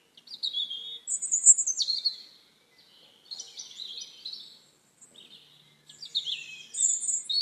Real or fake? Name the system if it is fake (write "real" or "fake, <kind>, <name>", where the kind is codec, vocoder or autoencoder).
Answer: real